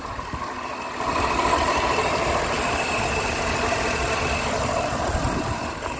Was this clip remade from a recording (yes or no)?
no